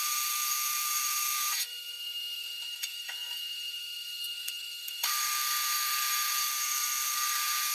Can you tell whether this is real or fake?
fake